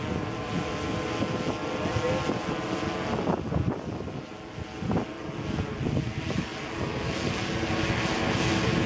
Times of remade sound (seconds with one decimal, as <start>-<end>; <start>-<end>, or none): none